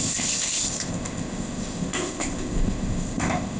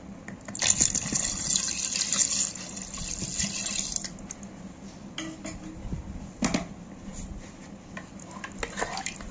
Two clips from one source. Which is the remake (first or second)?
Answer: first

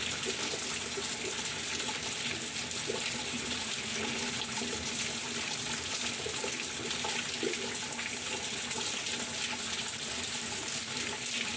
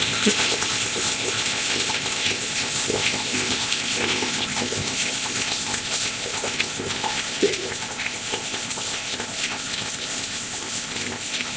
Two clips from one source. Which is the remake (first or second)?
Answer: second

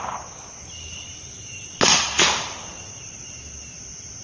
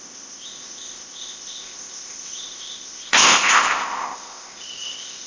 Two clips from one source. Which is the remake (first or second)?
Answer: second